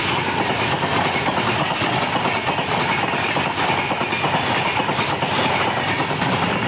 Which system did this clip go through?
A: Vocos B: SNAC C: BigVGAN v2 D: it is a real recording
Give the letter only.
D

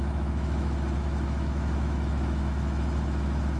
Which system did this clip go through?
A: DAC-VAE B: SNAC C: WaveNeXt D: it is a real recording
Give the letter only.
A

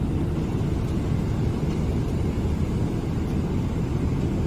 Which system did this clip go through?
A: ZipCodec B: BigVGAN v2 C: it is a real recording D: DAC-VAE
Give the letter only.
C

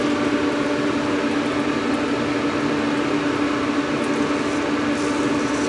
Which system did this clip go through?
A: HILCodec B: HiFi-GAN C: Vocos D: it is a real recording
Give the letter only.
D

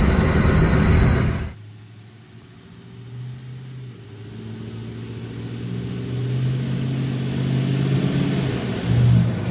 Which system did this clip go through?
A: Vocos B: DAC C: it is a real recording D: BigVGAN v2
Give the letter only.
C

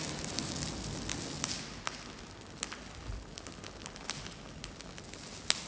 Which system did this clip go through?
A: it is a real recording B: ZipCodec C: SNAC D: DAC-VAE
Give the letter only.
A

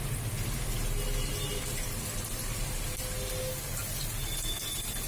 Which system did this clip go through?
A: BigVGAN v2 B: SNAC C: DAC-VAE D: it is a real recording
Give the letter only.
D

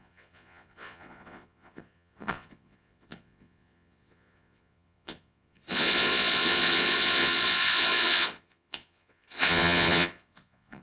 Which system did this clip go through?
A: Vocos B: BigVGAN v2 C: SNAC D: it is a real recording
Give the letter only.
A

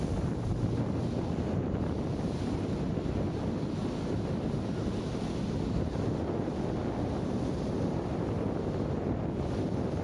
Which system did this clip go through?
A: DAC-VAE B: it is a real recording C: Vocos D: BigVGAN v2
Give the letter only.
B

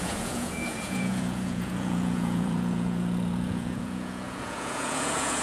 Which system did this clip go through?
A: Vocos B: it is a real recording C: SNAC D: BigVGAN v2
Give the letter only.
A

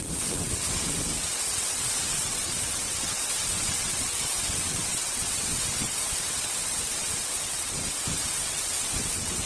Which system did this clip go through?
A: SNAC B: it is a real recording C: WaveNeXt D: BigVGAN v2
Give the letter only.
C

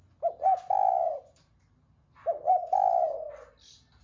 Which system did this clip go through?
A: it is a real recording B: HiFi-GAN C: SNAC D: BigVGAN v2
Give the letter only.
A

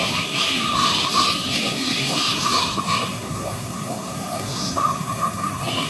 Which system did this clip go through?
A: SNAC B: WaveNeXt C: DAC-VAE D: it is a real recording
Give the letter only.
A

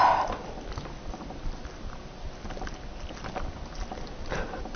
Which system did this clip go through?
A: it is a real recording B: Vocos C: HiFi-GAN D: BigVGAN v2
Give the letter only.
A